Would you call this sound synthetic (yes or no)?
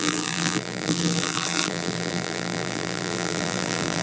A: yes